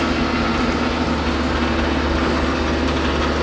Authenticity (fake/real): real